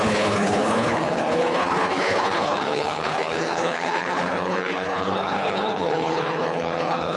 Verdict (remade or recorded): remade